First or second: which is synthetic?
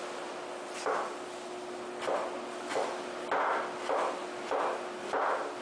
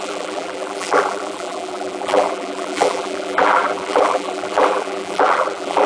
second